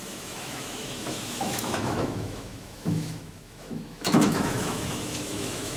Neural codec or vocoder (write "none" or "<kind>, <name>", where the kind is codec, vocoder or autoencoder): autoencoder, DAC-VAE